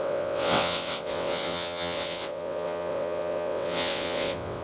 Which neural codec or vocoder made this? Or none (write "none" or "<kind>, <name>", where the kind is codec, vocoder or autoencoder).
vocoder, WaveNeXt